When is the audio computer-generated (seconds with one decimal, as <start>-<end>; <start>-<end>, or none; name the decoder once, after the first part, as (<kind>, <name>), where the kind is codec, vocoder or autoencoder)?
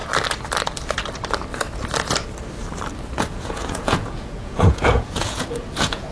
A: 3.3-6.1 (vocoder, Vocos)